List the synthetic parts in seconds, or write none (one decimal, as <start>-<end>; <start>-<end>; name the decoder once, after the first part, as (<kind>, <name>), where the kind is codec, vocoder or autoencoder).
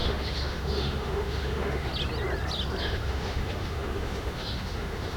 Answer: 0.0-1.9 (autoencoder, DAC-VAE); 2.8-5.2